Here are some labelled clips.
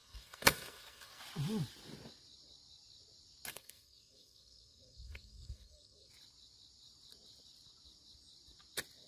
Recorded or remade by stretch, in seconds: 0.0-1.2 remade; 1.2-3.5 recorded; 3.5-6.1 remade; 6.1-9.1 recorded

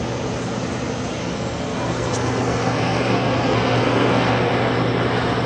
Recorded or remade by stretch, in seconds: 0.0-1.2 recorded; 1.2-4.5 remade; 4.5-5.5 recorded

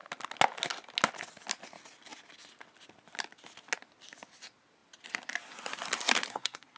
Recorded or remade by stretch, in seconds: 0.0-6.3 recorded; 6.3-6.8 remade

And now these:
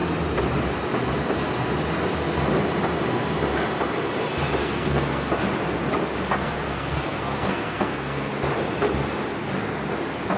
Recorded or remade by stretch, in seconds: 0.0-4.6 recorded; 4.6-5.3 remade; 5.3-6.3 recorded; 6.3-8.3 remade; 8.3-10.4 recorded

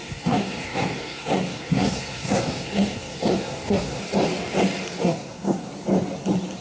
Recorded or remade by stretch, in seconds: 0.0-4.0 remade; 4.0-5.0 recorded; 5.0-5.7 remade; 5.7-6.6 recorded

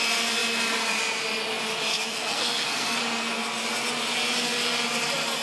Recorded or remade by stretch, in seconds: 0.0-1.9 recorded; 1.9-3.0 remade; 3.0-5.4 recorded

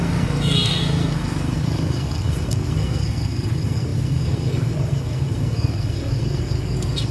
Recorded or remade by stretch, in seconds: 0.0-7.1 remade

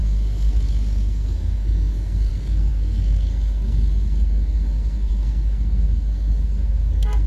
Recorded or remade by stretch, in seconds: 0.0-7.3 remade